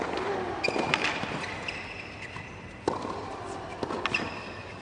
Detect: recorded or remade recorded